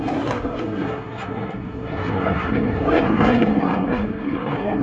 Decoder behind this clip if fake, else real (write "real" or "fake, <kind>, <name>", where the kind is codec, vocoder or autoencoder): fake, codec, SNAC